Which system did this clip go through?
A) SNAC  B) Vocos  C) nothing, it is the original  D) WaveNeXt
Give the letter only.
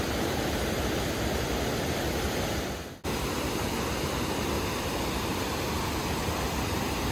C